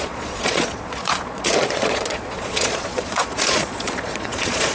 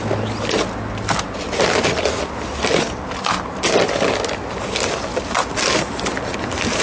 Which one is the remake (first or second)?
first